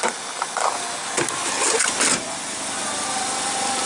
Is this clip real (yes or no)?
yes